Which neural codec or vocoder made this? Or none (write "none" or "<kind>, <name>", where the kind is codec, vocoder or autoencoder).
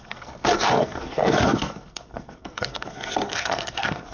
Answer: codec, SNAC